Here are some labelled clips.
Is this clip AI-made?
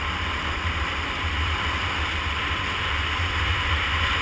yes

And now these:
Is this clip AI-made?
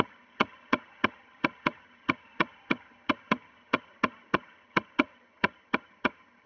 yes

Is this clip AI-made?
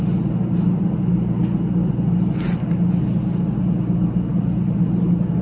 no